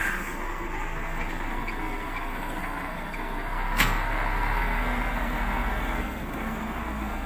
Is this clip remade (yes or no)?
yes